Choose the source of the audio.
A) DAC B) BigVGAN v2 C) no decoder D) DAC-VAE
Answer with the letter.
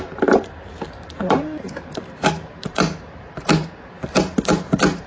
B